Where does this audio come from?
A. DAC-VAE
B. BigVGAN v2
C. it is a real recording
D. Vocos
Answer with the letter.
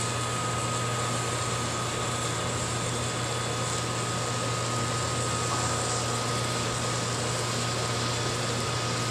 C